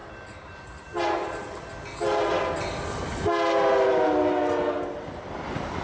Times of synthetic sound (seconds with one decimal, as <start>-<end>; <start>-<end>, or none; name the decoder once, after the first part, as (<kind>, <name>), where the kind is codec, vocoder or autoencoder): none

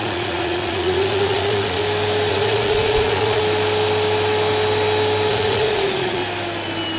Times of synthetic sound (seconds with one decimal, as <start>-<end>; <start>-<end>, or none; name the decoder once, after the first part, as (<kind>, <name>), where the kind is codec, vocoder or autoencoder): 0.0-1.8 (vocoder, Vocos); 2.3-3.4; 5.3-6.2

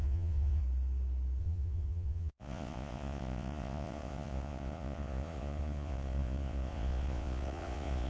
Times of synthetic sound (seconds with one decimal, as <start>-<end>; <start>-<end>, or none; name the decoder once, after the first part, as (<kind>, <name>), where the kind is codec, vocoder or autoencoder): 0.0-0.6 (vocoder, Vocos); 1.4-8.1